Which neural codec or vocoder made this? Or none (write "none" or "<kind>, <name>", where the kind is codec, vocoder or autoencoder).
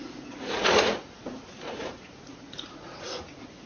vocoder, Vocos